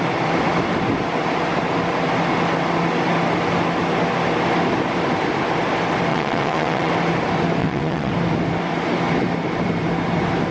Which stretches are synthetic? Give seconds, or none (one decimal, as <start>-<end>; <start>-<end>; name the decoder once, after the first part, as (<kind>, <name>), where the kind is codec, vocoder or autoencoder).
6.1-6.9 (vocoder, WaveNeXt); 7.6-8.1

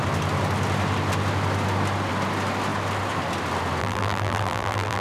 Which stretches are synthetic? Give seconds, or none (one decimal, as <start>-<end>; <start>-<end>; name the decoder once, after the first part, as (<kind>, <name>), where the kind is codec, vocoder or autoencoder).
3.8-5.0 (vocoder, BigVGAN v2)

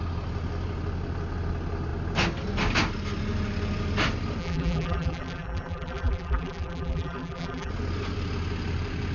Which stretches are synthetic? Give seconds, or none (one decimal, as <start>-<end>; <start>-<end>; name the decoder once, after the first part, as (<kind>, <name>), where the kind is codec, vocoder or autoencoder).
4.4-7.7 (vocoder, BigVGAN v2)

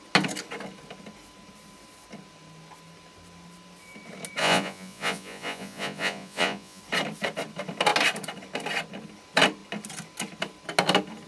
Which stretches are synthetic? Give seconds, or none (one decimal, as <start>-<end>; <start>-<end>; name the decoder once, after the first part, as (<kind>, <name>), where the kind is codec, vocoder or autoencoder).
4.4-6.8 (vocoder, Vocos)

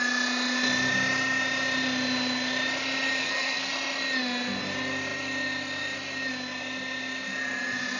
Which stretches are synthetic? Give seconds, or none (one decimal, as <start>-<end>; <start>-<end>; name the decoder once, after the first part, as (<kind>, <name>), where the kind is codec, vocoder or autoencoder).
3.2-3.7 (codec, SNAC)

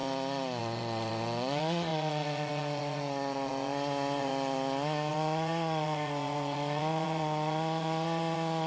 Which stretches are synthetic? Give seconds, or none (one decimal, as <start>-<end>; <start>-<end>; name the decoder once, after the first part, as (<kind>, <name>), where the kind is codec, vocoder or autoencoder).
0.6-4.3 (vocoder, Vocos); 5.1-8.7

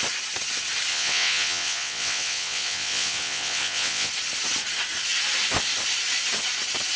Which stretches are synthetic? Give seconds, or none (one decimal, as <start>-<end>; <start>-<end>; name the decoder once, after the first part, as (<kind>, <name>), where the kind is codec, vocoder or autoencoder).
0.9-4.1 (vocoder, WaveNeXt)